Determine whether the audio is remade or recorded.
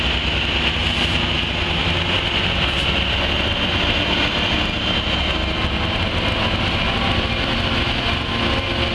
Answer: recorded